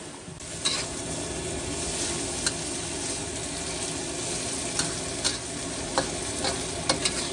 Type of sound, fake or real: real